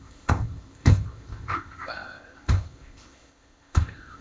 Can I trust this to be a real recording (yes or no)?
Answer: no